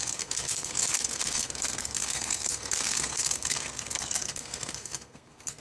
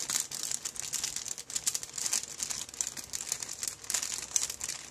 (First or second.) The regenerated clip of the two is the first